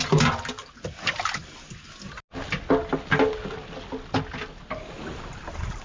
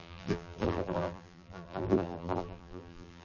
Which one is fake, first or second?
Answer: second